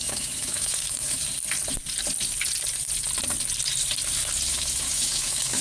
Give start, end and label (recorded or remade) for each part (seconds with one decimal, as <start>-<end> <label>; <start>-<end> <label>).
0.0-1.2 remade; 1.2-4.5 recorded; 4.5-5.6 remade